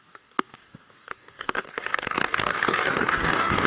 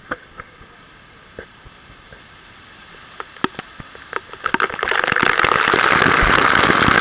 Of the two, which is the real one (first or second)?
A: second